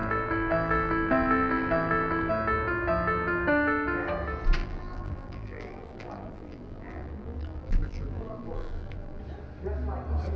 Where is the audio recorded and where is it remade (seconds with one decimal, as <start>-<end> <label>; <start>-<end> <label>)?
0.0-2.3 remade; 2.3-4.6 recorded; 4.6-9.2 remade; 9.2-10.4 recorded